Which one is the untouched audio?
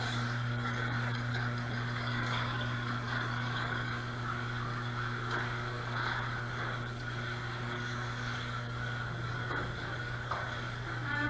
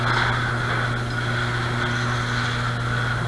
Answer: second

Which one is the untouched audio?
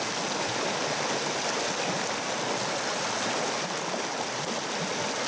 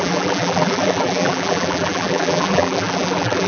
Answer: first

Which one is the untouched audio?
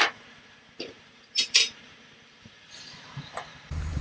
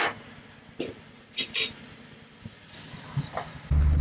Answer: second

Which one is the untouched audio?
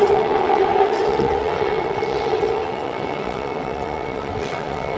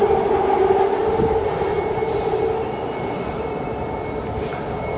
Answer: second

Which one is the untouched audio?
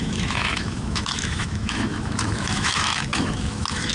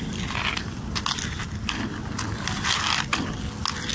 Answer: second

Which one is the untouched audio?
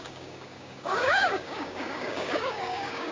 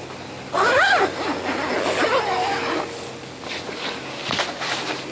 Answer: second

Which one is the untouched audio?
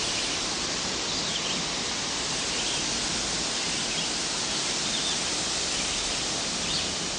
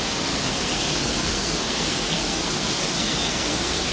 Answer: first